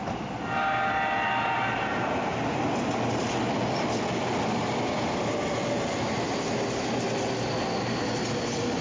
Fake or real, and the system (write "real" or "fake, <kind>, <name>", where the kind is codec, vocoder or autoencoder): real